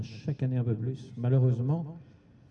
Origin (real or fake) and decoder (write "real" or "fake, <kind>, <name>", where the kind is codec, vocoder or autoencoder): real